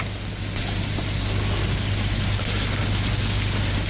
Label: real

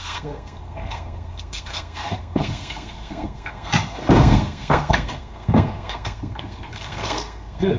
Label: fake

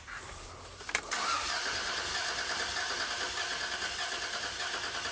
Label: real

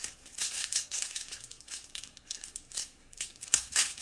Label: fake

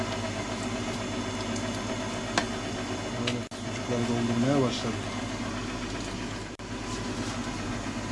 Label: real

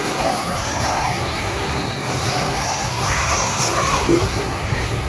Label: fake